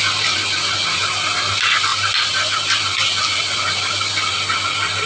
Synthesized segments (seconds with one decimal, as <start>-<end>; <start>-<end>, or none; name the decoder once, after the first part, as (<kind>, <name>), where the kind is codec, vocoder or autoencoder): none